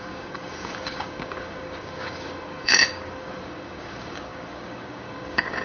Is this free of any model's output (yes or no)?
no